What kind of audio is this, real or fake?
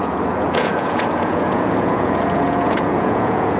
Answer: fake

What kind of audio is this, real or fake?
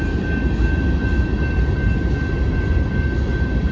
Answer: real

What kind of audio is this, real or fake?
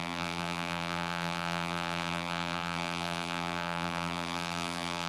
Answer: fake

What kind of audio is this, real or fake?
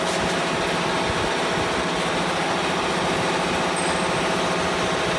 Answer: real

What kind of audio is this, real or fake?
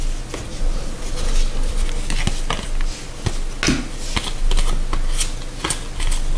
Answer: real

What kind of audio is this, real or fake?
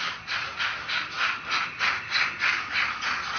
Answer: real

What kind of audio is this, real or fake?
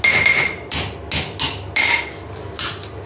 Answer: real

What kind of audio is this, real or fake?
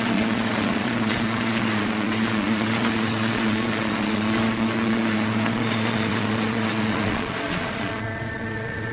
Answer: fake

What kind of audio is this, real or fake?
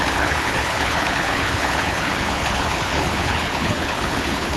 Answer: fake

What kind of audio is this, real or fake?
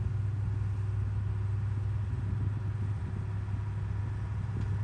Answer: real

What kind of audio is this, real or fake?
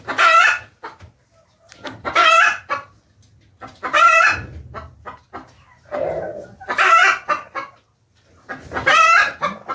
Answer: real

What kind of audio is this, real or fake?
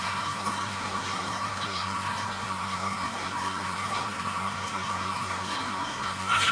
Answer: fake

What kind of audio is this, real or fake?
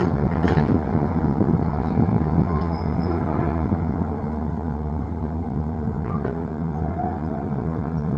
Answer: fake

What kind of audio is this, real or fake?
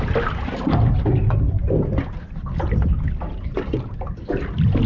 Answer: real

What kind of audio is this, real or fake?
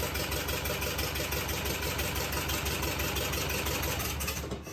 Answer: real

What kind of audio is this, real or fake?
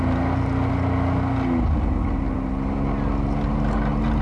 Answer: real